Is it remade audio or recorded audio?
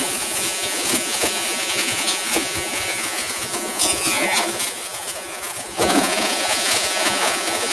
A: remade